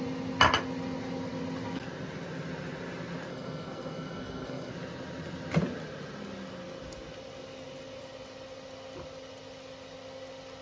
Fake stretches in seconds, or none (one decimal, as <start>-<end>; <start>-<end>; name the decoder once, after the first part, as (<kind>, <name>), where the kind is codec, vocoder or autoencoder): 3.3-4.7 (codec, SNAC)